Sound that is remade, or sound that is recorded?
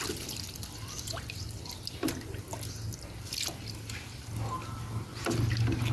recorded